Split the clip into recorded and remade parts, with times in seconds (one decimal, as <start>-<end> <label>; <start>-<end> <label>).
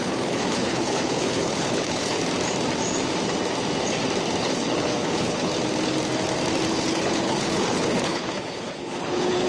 0.0-2.2 remade; 2.2-4.4 recorded; 4.4-5.5 remade; 5.5-6.7 recorded; 6.7-9.5 remade